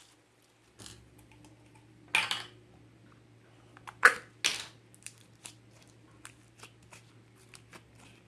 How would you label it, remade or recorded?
recorded